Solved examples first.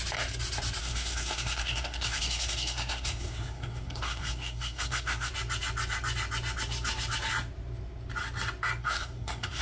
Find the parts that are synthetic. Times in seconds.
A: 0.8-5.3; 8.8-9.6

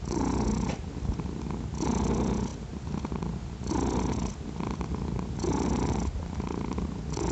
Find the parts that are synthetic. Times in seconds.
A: none

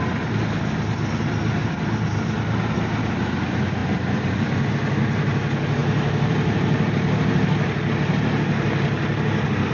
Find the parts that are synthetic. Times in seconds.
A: 3.8-4.7; 5.8-7.3